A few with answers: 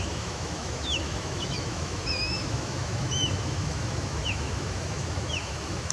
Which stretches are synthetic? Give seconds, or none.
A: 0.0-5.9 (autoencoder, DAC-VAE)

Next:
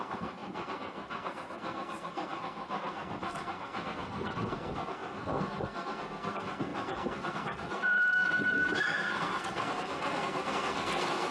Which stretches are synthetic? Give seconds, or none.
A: 0.0-11.3 (codec, SNAC)

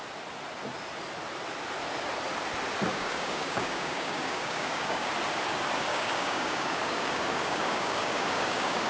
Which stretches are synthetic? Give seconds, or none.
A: 2.9-5.1 (codec, DAC); 5.9-8.9